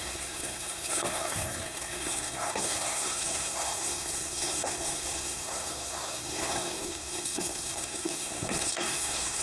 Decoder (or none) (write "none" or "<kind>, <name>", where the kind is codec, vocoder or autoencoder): codec, SNAC